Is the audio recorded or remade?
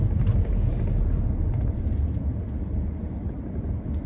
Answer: recorded